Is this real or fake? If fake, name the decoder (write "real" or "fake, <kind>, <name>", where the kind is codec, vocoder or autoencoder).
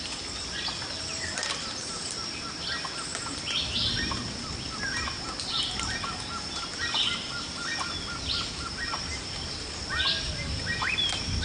real